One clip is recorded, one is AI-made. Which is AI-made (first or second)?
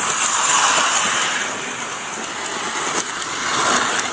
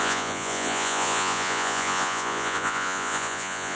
second